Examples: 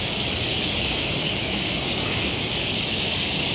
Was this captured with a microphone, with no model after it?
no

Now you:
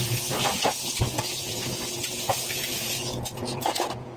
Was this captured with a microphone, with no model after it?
no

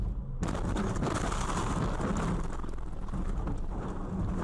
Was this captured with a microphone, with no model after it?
yes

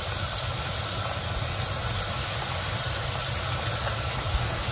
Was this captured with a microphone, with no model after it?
yes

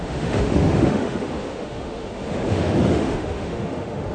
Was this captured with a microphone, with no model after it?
no